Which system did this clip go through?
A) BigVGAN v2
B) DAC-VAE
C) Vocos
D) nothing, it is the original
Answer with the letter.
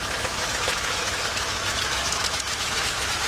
B